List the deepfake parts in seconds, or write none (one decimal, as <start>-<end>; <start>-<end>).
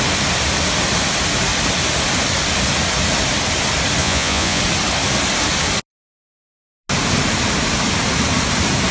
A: 4.0-4.6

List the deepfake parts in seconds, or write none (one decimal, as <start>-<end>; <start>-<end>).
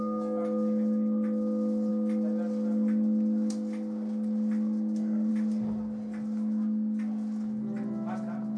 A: none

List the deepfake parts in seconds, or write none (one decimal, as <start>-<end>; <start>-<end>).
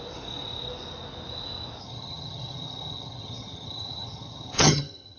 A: 1.8-5.2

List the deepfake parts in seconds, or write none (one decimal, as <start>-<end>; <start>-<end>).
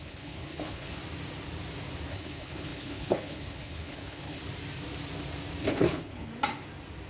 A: 0.0-1.0; 2.1-4.4; 5.6-6.3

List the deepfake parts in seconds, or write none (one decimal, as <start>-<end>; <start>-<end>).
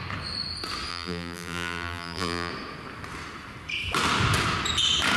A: 0.9-2.5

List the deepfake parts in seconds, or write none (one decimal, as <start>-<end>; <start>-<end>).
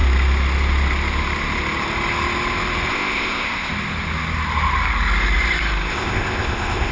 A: 2.9-3.7; 5.9-6.9